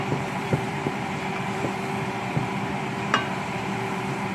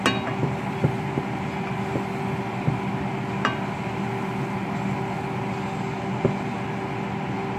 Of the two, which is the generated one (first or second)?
first